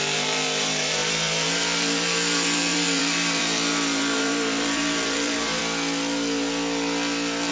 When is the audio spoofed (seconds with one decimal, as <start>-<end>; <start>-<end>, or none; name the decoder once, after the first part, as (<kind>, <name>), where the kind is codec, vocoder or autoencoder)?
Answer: 0.0-5.6 (vocoder, BigVGAN v2)